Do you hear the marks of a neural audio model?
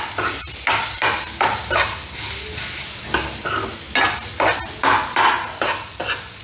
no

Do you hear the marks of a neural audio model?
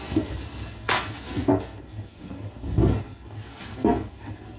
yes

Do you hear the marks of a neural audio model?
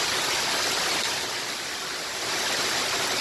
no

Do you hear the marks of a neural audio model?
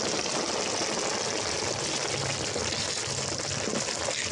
no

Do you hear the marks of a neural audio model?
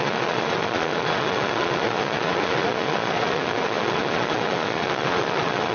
yes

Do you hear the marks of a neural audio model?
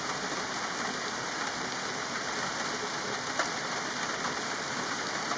no